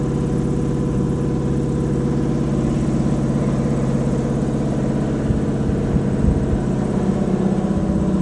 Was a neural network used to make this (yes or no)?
no